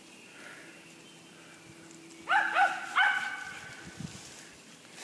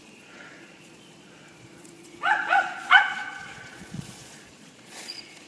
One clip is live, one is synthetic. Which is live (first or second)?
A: first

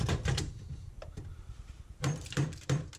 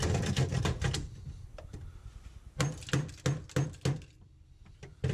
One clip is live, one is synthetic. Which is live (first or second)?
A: second